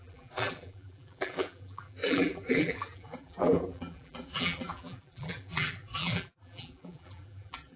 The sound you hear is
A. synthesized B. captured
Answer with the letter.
A